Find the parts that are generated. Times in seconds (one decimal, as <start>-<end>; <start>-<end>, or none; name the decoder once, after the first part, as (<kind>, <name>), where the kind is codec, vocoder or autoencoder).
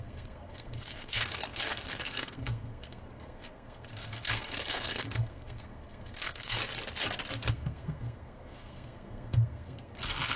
0.0-6.6 (codec, SNAC); 7.5-10.4